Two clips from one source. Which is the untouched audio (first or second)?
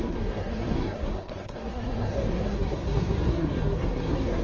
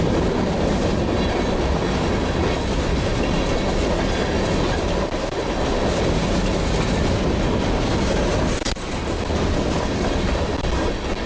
second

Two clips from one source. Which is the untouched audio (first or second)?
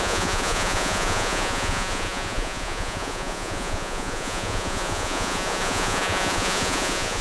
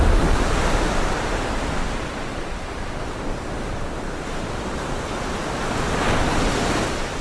second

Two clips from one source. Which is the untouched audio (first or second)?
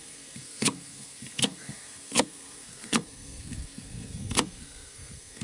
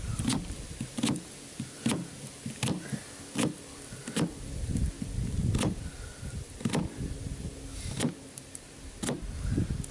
second